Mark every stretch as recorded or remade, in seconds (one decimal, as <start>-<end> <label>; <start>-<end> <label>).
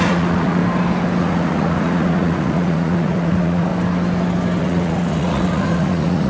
0.0-0.6 remade; 0.6-1.2 recorded; 1.2-3.7 remade; 3.7-4.6 recorded; 4.6-6.3 remade